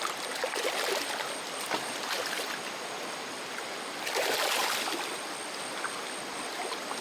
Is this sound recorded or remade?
recorded